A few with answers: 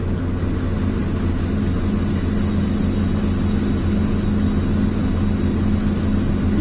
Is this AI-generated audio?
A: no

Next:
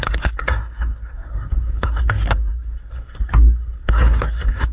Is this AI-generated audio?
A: yes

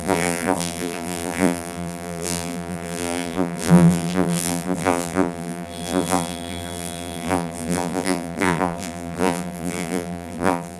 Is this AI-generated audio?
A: yes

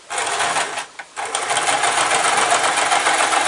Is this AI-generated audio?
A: no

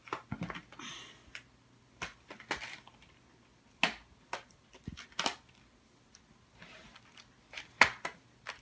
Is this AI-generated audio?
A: no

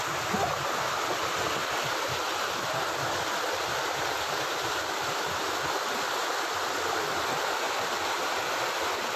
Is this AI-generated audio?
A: no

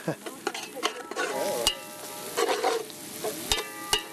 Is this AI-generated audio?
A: no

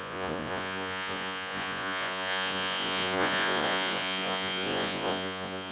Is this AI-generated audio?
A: yes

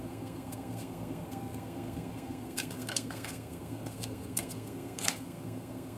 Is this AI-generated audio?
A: yes